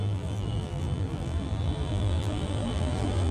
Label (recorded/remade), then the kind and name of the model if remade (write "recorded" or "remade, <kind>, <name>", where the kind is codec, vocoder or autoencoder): remade, vocoder, BigVGAN v2